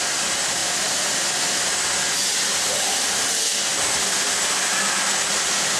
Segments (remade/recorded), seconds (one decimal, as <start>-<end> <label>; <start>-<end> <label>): 0.0-5.8 recorded